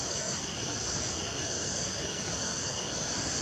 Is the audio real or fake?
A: fake